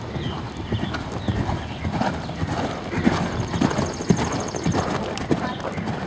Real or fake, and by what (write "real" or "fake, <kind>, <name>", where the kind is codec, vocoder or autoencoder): real